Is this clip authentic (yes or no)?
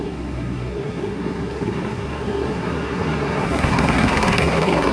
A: no